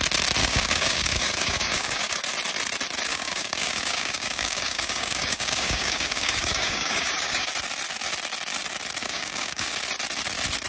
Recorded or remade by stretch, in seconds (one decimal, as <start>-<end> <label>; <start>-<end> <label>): 0.0-0.4 recorded; 0.4-2.2 remade; 2.2-3.1 recorded; 3.1-7.5 remade; 7.5-9.0 recorded; 9.0-9.7 remade; 9.7-10.7 recorded